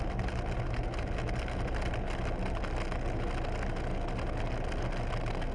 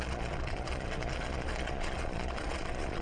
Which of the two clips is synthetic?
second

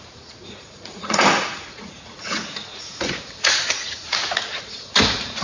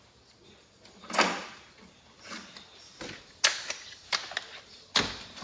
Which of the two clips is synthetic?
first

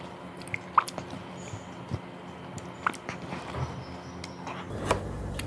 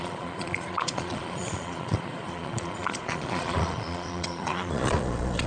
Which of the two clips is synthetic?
second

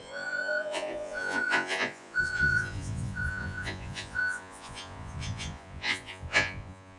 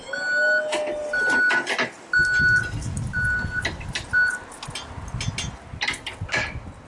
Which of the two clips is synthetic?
first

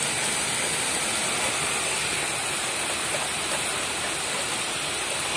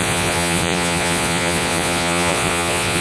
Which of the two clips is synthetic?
second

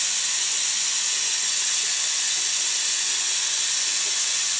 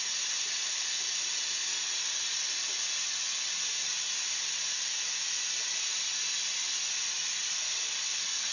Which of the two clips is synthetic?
first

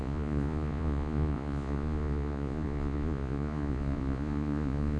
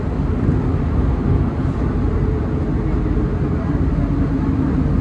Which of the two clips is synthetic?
first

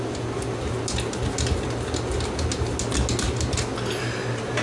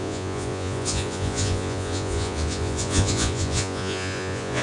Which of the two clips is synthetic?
second